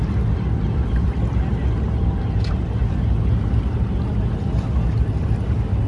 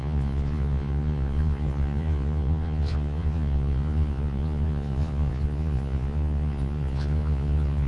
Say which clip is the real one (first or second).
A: first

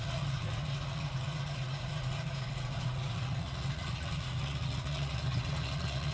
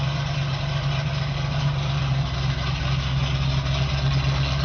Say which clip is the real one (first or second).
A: second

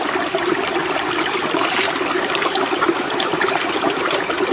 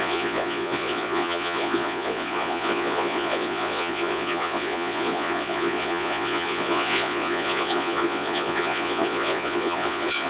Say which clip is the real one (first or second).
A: first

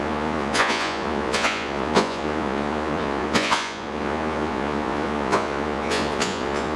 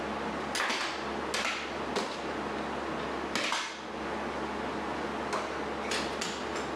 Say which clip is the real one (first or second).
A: second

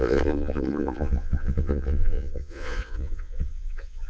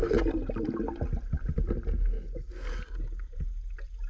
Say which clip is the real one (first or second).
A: second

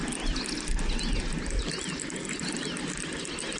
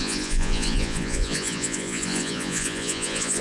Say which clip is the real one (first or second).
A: first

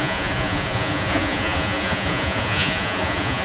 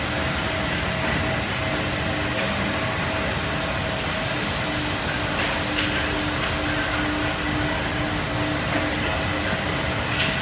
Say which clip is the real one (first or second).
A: second